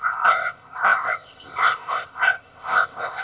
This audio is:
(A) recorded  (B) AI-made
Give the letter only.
B